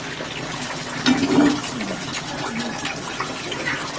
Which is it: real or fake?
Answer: real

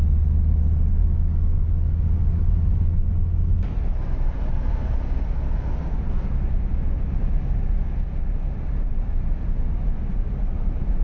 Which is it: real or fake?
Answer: real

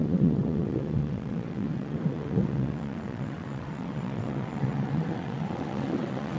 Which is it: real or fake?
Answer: fake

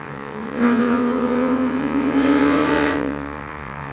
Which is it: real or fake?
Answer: fake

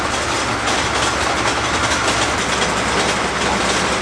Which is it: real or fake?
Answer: real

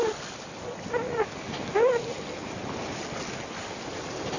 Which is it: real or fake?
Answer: real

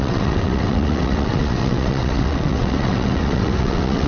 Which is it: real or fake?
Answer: fake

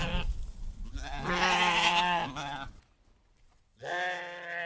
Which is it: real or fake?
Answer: real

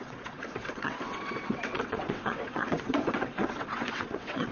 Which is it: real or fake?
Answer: fake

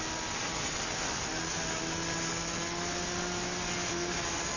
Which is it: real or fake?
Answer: real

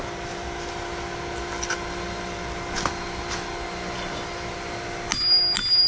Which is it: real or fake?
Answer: real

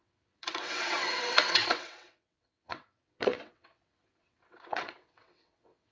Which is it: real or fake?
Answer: fake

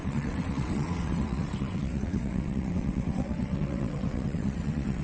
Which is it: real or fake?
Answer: fake